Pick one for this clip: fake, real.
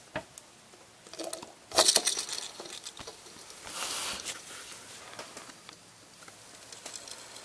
real